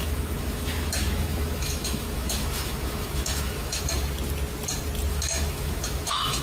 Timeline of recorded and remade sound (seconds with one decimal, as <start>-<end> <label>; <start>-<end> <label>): 0.0-3.8 remade; 3.8-5.1 recorded; 5.1-6.4 remade